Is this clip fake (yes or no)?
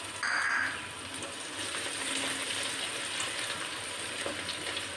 no